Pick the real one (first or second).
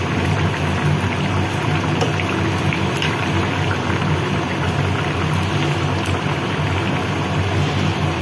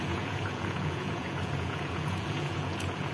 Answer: first